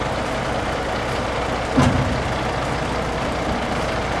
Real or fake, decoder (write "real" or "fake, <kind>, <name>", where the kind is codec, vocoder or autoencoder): real